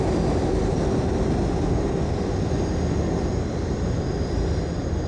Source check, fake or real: real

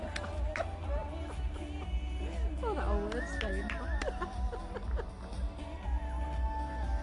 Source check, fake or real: real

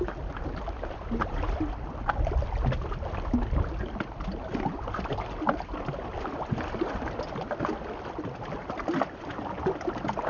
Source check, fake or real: real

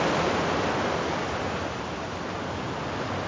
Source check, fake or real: real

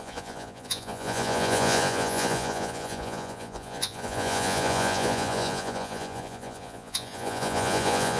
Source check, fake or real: fake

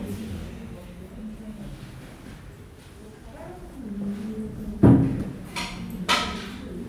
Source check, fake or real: real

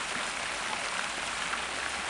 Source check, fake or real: real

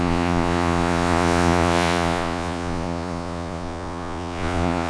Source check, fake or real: fake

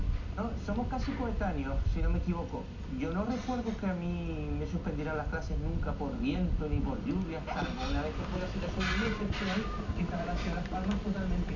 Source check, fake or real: real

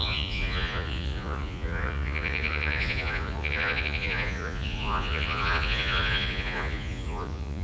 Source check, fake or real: fake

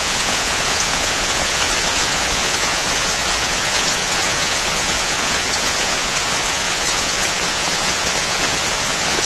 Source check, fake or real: fake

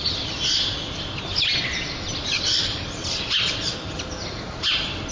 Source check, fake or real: real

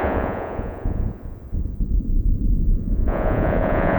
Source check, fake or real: fake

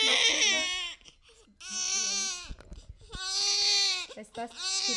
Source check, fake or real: real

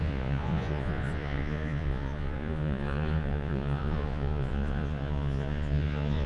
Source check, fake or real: fake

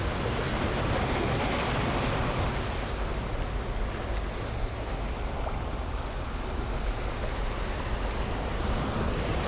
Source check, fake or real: real